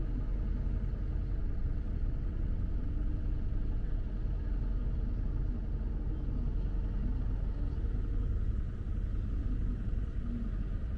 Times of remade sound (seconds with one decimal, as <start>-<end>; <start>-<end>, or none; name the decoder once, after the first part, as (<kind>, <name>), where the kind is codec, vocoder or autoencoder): 1.4-4.1 (vocoder, WaveNeXt)